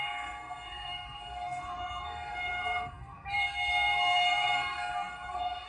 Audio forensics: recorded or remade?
remade